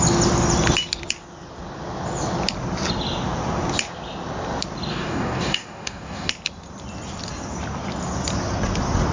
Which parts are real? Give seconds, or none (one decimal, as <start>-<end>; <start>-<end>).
0.0-4.9; 6.3-9.1

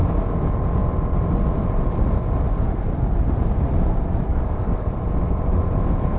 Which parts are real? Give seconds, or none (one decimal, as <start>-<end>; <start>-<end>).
0.0-4.3; 5.0-6.2

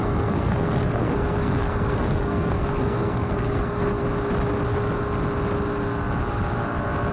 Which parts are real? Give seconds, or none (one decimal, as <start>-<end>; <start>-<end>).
4.0-7.1

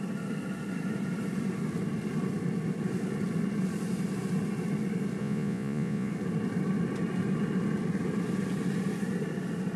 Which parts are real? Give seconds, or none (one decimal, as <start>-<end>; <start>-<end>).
0.0-5.2; 6.1-9.8

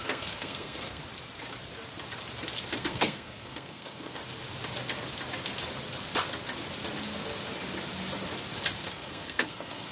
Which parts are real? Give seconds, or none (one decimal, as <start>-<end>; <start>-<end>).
1.0-2.8; 4.2-8.9